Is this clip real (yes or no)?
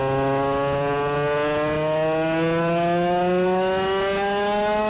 yes